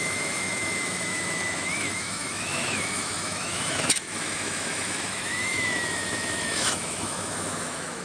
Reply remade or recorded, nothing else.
remade